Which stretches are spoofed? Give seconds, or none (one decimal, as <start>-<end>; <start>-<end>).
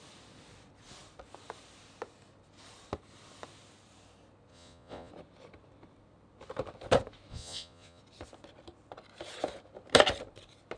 4.5-5.1; 7.3-8.0